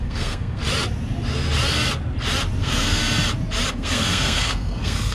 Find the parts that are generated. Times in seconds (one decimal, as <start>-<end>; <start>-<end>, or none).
0.0-0.6; 2.6-3.0; 3.7-5.1